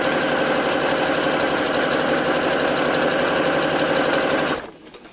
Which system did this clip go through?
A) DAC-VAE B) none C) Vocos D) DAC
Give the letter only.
B